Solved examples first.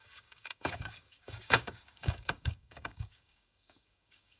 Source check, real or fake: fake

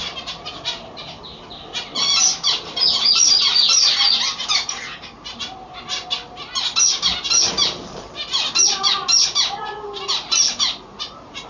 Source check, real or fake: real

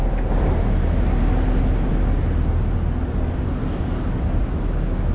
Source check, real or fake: real